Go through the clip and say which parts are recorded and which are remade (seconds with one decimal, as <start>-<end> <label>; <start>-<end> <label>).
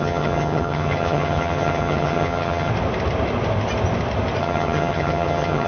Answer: 0.0-2.7 remade; 2.7-4.4 recorded; 4.4-5.7 remade